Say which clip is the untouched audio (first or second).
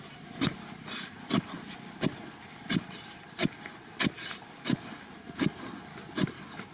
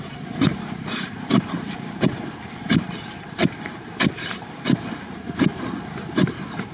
first